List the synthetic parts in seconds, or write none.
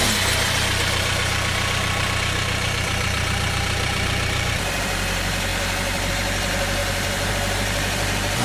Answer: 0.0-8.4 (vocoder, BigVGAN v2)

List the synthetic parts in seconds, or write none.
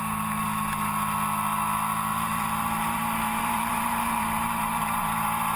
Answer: 2.1-5.6 (vocoder, BigVGAN v2)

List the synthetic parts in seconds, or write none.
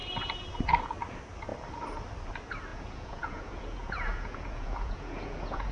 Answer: 2.7-5.7 (vocoder, Vocos)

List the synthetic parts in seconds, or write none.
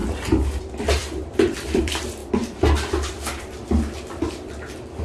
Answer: 0.0-5.0 (vocoder, BigVGAN v2)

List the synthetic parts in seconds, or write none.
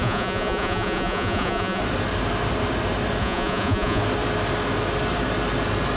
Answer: 0.0-1.8 (vocoder, Vocos); 3.2-4.0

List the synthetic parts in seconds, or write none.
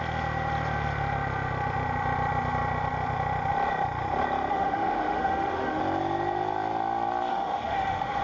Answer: 4.5-5.8 (autoencoder, DAC-VAE); 7.3-8.2